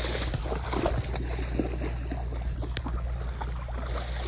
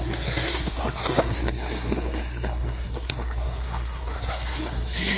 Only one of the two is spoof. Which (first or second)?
second